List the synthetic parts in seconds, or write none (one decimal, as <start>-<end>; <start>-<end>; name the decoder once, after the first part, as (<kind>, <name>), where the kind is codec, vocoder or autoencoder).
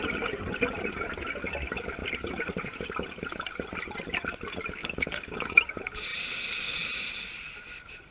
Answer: 4.8-5.6 (codec, DAC)